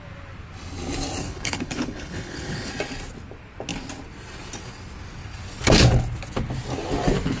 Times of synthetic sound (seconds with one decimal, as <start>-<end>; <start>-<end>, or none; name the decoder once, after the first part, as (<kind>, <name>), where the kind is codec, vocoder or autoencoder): 1.2-2.7 (codec, HILCodec)